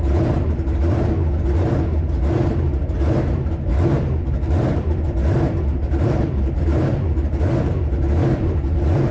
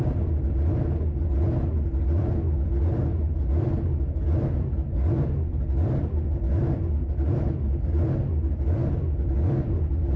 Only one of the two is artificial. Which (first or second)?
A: first